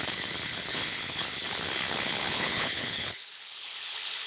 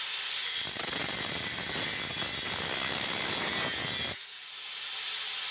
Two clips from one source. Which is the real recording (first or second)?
second